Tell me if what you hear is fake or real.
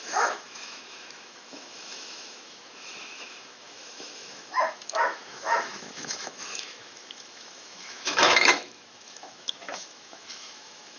fake